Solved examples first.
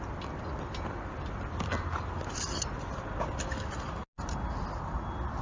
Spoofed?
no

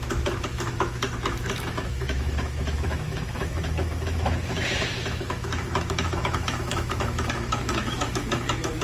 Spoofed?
yes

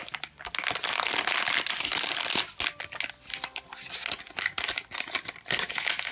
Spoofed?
no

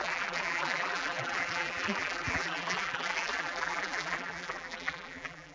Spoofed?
yes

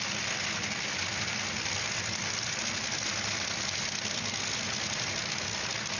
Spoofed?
no